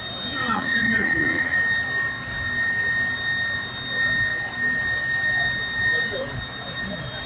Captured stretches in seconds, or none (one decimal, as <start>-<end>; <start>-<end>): 0.0-0.4; 1.6-7.3